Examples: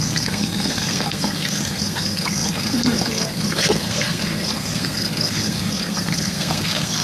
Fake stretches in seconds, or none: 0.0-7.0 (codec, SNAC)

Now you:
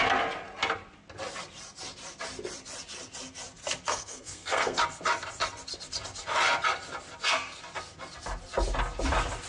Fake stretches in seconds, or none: 3.9-4.8 (codec, SNAC)

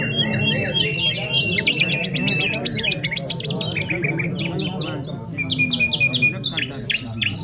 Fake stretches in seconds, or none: none

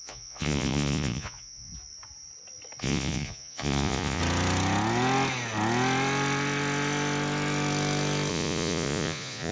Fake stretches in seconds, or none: 0.0-1.7 (vocoder, Vocos); 2.8-4.2; 8.3-9.5

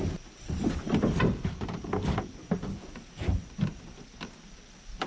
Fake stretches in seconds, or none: none

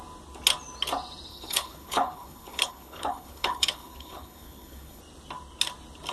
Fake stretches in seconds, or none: 1.3-5.0 (codec, HILCodec)